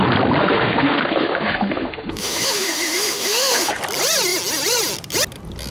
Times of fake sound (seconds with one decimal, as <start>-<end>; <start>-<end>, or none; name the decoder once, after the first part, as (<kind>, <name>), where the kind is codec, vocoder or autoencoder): 0.4-3.8 (autoencoder, DAC-VAE)